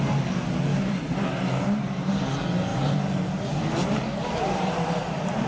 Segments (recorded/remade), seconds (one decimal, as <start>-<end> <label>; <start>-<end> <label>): 0.0-0.7 recorded; 0.7-2.1 remade; 2.1-2.7 recorded; 2.7-5.5 remade